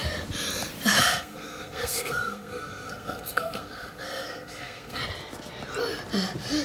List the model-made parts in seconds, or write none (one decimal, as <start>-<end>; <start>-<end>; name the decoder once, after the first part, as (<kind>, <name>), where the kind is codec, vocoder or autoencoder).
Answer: 1.0-5.0 (codec, SNAC)